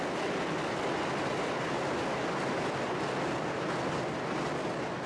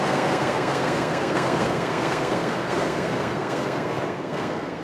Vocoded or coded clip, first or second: second